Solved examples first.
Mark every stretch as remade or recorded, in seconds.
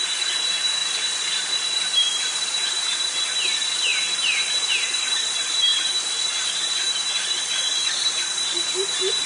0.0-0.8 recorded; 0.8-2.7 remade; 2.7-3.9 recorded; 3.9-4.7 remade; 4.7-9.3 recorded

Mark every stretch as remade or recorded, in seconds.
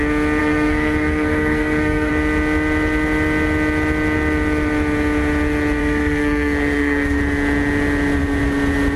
0.0-0.4 recorded; 0.4-2.1 remade; 2.1-5.8 recorded; 5.8-7.2 remade; 7.2-9.0 recorded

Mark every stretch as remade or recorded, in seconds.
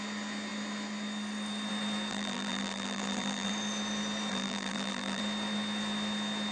0.0-2.1 recorded; 2.1-3.5 remade; 3.5-4.3 recorded; 4.3-5.2 remade; 5.2-6.5 recorded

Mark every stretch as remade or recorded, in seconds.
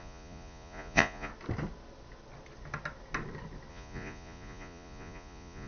0.0-1.3 remade; 1.3-3.7 recorded; 3.7-5.7 remade